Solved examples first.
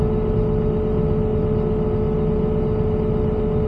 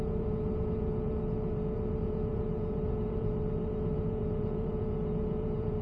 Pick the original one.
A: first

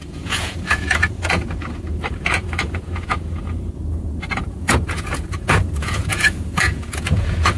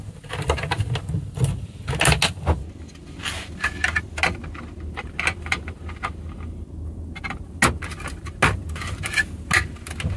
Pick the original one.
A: second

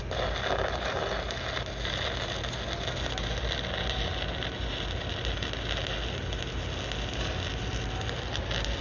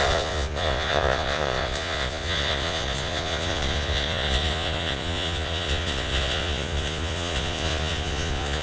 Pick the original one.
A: first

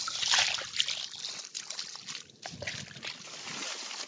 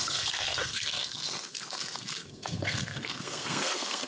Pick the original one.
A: first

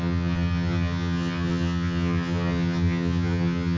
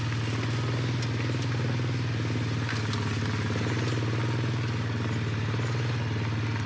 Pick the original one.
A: second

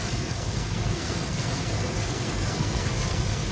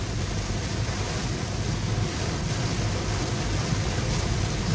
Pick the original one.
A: second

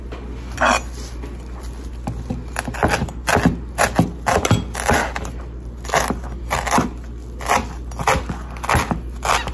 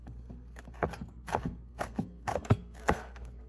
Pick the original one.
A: first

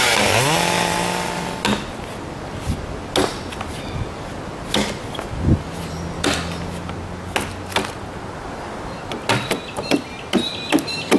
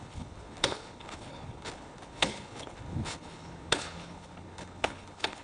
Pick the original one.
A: first